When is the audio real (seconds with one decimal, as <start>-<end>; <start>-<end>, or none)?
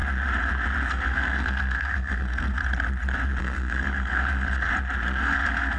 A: 0.0-0.9; 2.6-3.4; 4.7-5.2